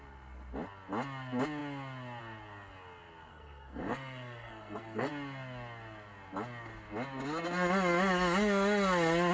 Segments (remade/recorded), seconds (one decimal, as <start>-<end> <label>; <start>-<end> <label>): 0.0-3.3 recorded; 3.3-5.1 remade; 5.1-9.3 recorded